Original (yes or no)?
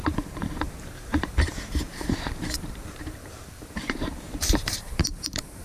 no